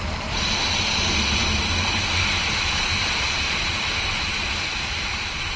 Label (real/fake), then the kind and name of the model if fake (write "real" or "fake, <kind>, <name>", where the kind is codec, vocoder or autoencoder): real